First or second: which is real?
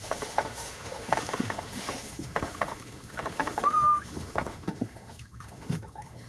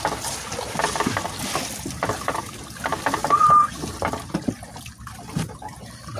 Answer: second